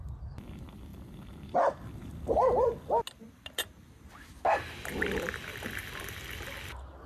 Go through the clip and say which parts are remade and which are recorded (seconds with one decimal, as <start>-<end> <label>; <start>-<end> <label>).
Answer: 0.0-7.1 recorded